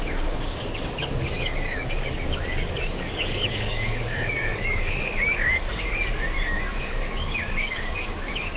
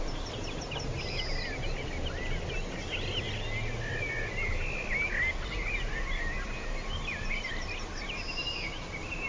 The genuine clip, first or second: second